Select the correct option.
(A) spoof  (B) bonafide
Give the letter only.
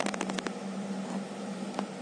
B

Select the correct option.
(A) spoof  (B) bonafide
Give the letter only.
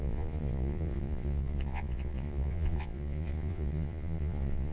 A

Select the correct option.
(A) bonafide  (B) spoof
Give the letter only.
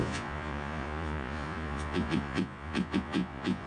B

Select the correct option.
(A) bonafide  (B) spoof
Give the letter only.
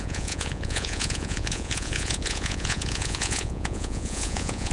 B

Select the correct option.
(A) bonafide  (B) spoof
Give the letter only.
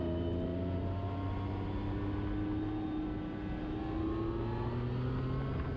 A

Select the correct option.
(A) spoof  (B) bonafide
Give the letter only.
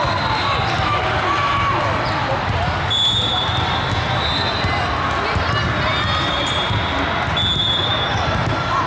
B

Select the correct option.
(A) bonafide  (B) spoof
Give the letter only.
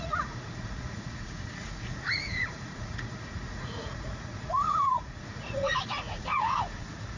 B